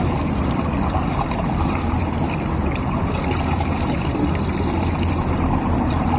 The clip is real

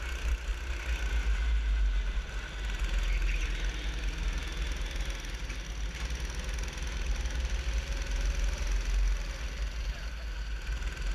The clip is real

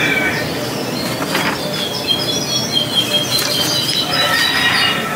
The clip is real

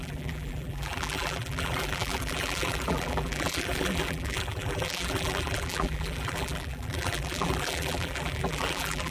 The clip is fake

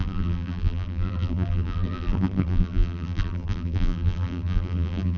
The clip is fake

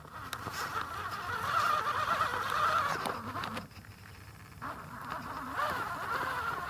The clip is real